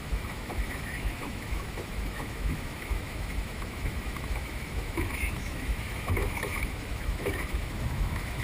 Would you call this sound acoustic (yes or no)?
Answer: no